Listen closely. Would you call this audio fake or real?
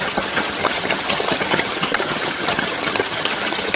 fake